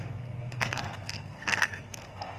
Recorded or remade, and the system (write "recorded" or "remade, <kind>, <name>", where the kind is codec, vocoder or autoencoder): remade, codec, SNAC